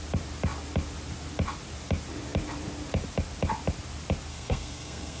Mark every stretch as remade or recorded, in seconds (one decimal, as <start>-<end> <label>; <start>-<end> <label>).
0.0-4.3 recorded; 4.3-5.2 remade